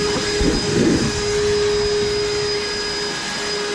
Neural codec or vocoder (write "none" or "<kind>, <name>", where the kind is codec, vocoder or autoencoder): none